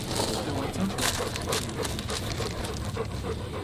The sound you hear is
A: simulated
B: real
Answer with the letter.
B